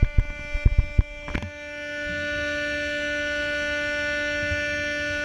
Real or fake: real